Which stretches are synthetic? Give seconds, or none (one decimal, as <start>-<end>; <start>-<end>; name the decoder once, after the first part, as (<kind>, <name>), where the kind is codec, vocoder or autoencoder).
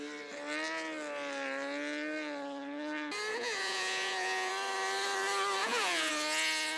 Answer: 3.3-4.5 (vocoder, Vocos); 5.6-6.1